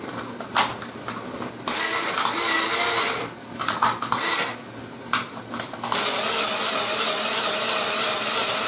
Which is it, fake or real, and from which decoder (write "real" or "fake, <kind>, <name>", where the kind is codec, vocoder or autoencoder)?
real